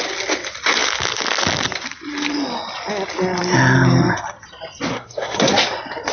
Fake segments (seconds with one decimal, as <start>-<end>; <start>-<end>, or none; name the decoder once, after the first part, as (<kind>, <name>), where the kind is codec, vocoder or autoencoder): 4.9-5.5 (codec, SNAC)